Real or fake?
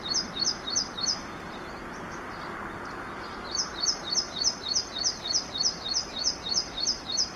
real